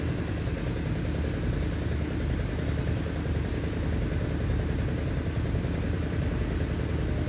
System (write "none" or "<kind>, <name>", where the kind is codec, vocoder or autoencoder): none